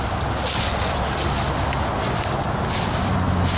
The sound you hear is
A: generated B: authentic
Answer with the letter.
B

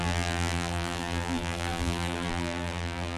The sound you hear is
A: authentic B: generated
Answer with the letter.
B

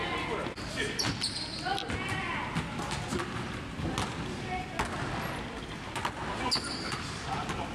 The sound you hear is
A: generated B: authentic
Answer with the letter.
B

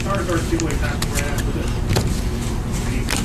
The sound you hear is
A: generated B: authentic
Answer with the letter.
B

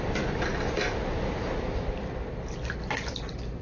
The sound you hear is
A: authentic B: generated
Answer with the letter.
A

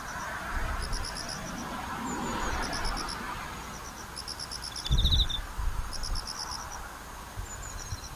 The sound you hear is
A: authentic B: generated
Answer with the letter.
A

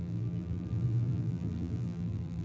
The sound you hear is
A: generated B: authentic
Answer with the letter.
A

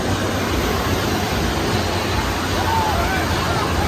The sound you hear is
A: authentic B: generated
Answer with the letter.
A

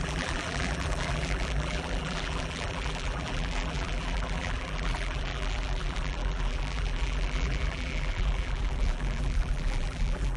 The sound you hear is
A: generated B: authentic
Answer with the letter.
A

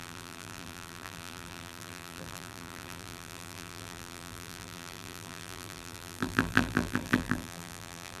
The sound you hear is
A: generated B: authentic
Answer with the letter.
A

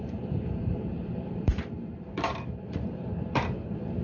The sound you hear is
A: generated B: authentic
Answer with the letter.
A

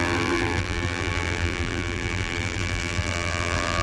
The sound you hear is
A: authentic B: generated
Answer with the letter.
B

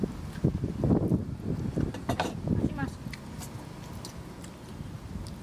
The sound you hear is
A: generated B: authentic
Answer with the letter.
B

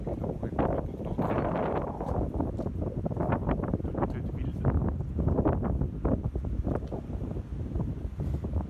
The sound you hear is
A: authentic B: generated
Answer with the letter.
A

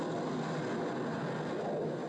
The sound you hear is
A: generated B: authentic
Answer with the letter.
B